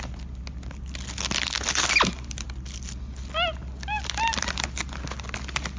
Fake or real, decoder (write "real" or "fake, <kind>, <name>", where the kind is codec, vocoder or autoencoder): real